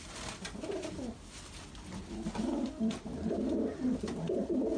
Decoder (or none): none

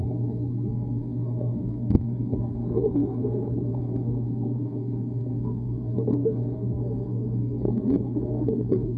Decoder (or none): codec, SNAC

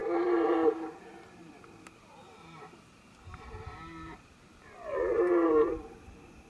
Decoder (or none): vocoder, BigVGAN v2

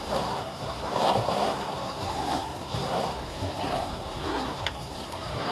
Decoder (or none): codec, SNAC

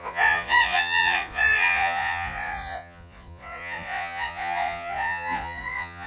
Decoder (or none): vocoder, Vocos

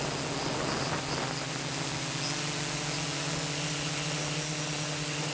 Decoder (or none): none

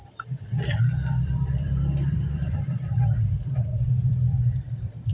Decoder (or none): vocoder, BigVGAN v2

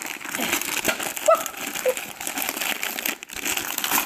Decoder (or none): none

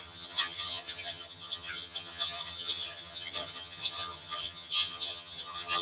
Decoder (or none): vocoder, HiFi-GAN